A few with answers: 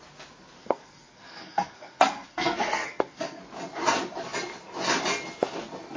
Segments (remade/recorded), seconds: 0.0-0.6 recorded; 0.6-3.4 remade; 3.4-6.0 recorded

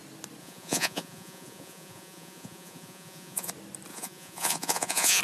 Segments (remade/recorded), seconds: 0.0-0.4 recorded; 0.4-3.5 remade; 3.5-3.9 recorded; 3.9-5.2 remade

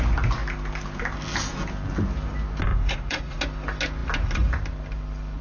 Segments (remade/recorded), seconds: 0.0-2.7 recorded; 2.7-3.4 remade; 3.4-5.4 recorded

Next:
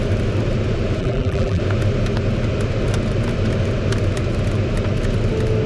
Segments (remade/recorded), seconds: 0.0-1.0 recorded; 1.0-1.6 remade; 1.6-5.7 recorded

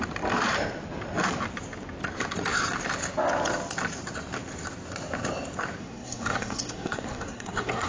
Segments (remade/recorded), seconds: 0.0-5.8 recorded; 5.8-7.9 remade

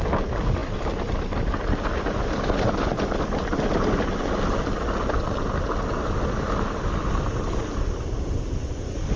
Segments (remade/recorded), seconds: 0.0-9.2 recorded

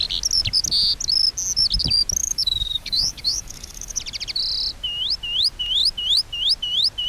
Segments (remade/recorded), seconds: 0.0-2.2 recorded; 2.2-4.0 remade; 4.0-7.1 recorded